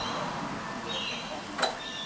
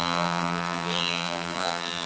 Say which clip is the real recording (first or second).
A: first